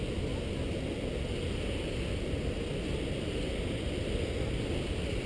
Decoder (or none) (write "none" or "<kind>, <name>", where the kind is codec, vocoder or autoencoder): none